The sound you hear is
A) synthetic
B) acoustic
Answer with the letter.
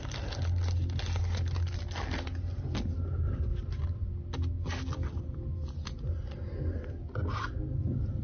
B